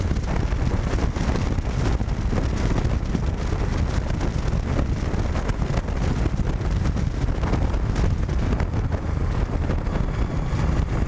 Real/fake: real